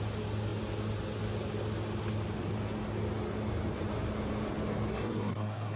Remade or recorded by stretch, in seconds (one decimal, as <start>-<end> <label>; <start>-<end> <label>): 0.0-4.9 recorded; 4.9-5.8 remade